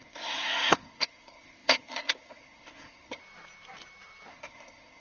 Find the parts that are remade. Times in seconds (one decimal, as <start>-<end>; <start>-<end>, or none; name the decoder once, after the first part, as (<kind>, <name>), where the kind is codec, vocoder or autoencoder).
0.0-3.2 (codec, SNAC); 4.3-5.0